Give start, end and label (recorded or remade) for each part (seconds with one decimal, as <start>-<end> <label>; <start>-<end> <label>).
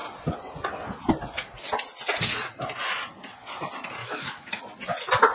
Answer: 0.0-4.0 recorded; 4.0-4.6 remade; 4.6-5.3 recorded